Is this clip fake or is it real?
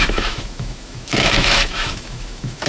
fake